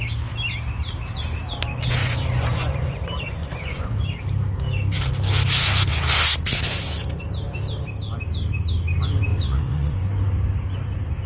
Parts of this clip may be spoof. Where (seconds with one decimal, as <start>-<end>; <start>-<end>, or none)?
2.0-3.0; 3.4-4.0; 9.3-10.1